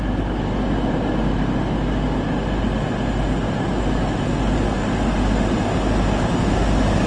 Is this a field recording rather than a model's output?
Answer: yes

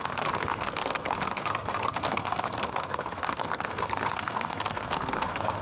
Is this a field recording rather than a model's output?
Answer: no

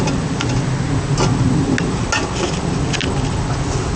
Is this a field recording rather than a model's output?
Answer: yes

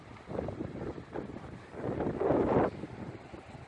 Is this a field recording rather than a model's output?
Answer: yes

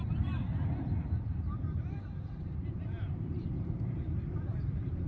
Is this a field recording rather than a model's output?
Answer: no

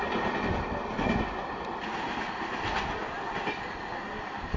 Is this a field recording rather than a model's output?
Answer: yes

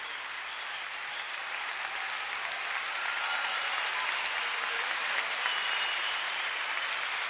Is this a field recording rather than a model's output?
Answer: yes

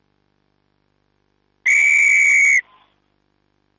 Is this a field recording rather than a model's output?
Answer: yes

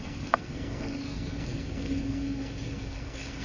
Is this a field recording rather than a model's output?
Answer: no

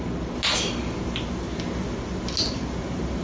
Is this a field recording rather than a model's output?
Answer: yes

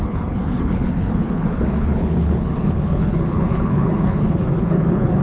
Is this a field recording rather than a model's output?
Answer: no